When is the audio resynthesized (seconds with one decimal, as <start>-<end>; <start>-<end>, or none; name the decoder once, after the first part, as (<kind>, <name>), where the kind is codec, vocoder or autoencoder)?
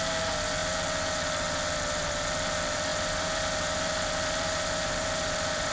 2.9-5.7 (vocoder, BigVGAN v2)